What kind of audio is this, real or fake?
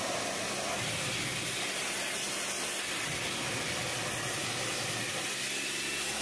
real